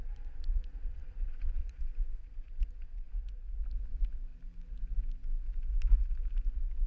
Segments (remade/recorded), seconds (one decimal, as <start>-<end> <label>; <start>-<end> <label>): 0.0-1.8 remade; 1.8-2.2 recorded; 2.2-3.1 remade; 3.1-6.9 recorded